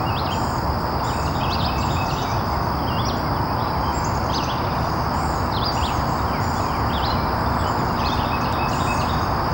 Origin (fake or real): real